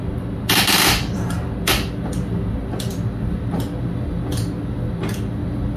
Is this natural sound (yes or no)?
yes